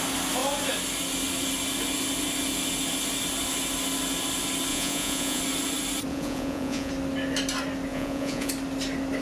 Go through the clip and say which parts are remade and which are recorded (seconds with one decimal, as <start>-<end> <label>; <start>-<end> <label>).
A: 0.0-4.7 recorded; 4.7-5.4 remade; 5.4-6.1 recorded; 6.1-6.9 remade; 6.9-7.9 recorded; 7.9-8.5 remade; 8.5-9.2 recorded